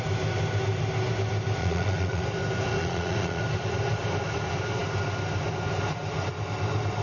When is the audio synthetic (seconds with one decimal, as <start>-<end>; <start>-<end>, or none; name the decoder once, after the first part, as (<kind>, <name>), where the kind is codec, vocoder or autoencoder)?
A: 1.6-2.2 (vocoder, Vocos); 2.8-3.4